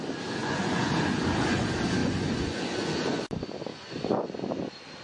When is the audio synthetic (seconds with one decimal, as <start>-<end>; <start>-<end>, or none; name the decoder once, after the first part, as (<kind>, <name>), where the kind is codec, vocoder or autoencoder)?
0.4-1.6 (vocoder, Vocos); 2.0-3.2; 3.7-4.3

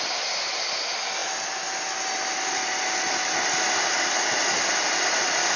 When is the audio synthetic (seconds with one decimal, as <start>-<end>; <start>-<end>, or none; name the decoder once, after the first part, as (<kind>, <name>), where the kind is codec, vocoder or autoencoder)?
none

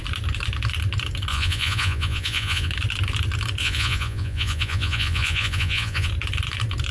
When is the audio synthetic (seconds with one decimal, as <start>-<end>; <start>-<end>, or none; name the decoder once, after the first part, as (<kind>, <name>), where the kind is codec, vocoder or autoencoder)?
1.3-2.7 (vocoder, Vocos); 3.6-6.1

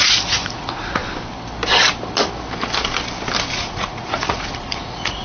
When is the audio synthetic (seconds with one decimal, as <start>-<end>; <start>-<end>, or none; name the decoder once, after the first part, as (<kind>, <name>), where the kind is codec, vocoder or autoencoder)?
0.0-1.0 (vocoder, Vocos); 3.5-5.2

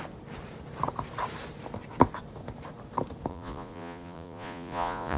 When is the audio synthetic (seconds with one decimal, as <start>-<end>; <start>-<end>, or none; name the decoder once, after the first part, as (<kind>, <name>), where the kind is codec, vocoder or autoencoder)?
3.3-5.2 (vocoder, Vocos)

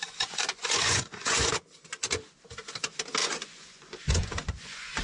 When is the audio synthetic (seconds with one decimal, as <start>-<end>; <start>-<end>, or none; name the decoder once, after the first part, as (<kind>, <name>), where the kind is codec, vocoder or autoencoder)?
0.0-1.5 (vocoder, Vocos); 3.2-5.0

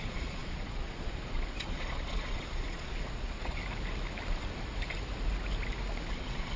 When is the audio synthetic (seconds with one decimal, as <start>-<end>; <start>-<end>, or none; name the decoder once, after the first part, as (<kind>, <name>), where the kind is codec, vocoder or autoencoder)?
0.0-3.6 (vocoder, Vocos); 6.1-6.6